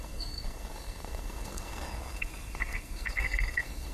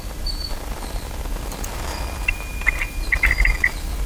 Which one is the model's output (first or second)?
first